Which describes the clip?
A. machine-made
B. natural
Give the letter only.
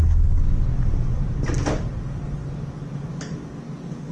B